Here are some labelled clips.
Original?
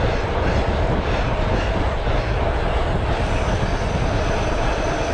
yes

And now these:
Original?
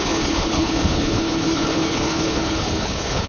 no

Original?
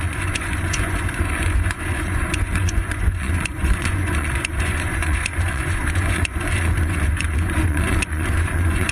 no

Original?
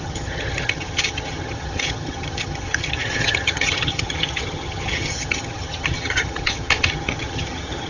no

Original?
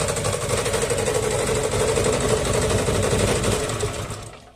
yes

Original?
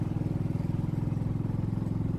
yes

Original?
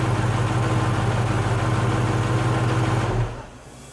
yes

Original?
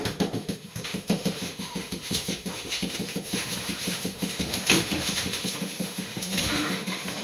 no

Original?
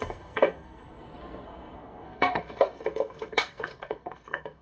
no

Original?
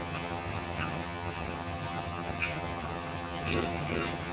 no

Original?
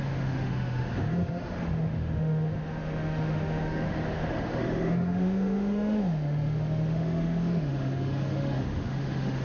no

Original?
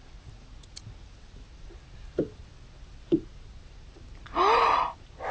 yes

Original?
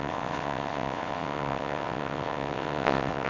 no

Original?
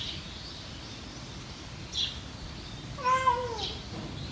yes